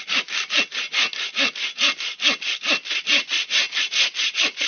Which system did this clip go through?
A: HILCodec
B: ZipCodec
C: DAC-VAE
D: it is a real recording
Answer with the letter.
D